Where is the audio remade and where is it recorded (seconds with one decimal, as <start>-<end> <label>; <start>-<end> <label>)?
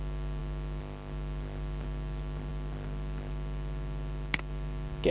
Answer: 0.0-5.1 recorded